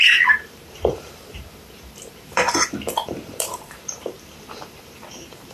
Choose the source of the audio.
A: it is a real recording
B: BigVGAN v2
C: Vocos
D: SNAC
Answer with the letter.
B